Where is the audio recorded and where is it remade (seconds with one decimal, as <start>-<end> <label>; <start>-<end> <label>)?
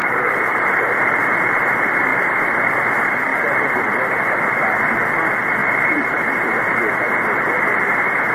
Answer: 0.0-1.2 remade; 1.2-3.3 recorded; 3.3-3.8 remade; 3.8-5.6 recorded; 5.6-6.2 remade; 6.2-8.3 recorded